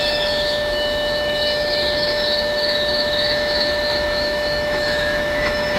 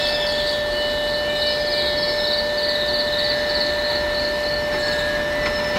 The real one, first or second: second